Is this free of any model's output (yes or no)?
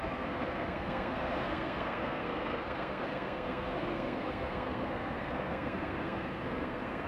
no